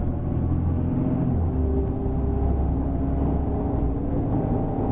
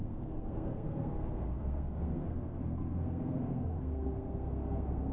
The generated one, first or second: second